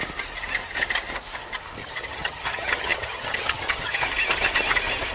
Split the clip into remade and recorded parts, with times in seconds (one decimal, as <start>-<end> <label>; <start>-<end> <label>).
0.0-1.8 recorded; 1.8-4.0 remade; 4.0-5.1 recorded